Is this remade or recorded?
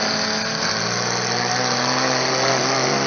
recorded